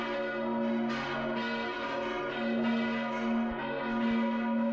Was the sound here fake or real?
real